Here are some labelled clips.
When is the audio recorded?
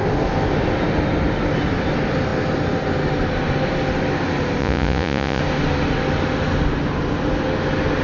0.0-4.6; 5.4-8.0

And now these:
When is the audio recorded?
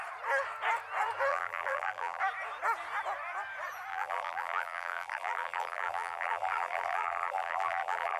0.0-1.3; 2.2-3.9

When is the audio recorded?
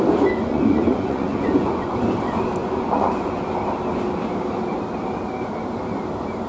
0.0-0.5; 2.0-2.6; 3.3-6.5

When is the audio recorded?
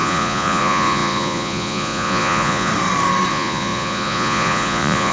2.7-3.3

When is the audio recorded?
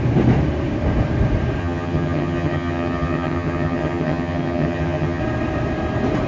0.0-1.6; 5.2-6.3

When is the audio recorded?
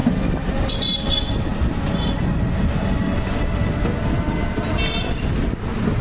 0.0-6.0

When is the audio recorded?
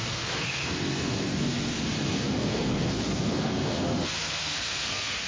none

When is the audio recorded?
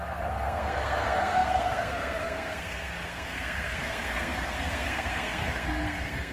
none